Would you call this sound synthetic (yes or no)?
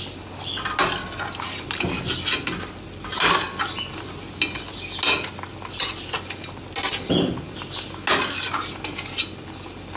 no